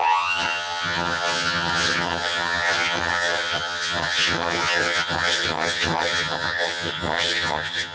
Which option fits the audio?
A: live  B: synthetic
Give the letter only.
B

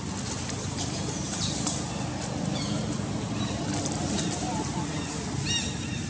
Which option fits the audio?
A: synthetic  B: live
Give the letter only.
B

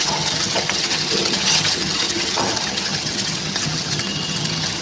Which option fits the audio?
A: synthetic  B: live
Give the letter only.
A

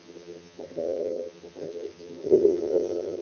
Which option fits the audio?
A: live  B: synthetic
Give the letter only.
B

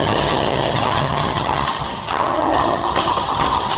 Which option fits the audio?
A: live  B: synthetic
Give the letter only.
B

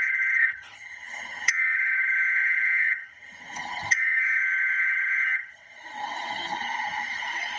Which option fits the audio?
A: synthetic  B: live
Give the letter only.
A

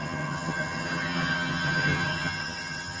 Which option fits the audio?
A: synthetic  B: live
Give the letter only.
A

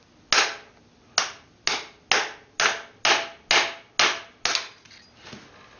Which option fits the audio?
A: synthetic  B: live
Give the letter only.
B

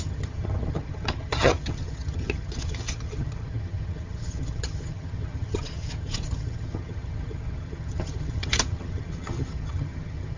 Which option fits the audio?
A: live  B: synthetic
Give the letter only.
B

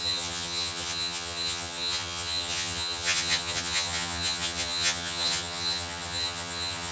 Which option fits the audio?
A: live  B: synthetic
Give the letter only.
B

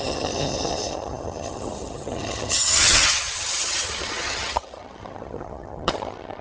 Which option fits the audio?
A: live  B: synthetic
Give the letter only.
B